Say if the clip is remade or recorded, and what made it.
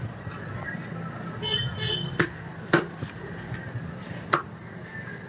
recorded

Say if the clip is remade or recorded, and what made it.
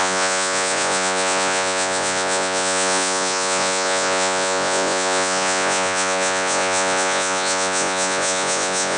remade, vocoder, Vocos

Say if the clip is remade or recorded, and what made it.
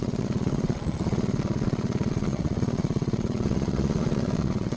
remade, vocoder, Vocos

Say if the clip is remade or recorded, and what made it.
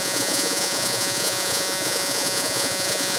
remade, vocoder, Vocos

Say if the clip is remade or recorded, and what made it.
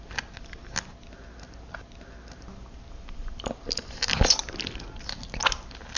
recorded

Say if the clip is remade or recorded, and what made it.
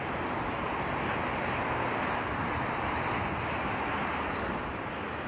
recorded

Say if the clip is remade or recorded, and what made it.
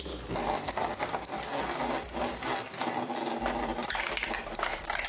recorded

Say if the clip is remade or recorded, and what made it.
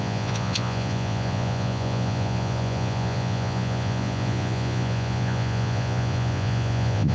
remade, vocoder, Vocos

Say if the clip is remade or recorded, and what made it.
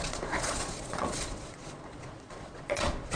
remade, vocoder, Vocos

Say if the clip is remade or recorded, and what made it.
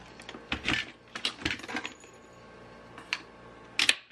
recorded